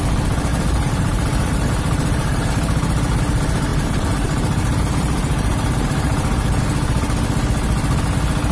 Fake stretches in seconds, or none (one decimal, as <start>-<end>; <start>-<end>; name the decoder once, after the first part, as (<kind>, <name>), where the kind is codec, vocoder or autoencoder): 0.5-2.5 (vocoder, BigVGAN v2); 3.7-6.6